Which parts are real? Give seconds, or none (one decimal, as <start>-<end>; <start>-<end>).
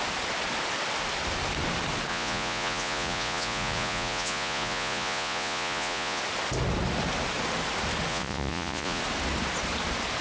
0.0-2.1; 6.2-8.1; 9.0-10.2